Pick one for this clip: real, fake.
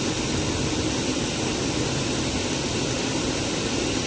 real